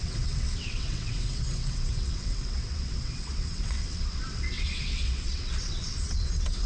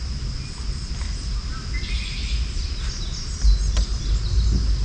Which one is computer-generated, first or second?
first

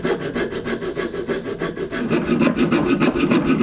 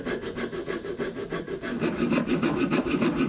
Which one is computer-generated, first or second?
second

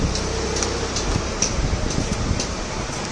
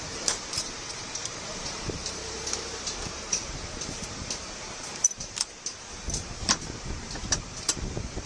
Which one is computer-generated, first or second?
second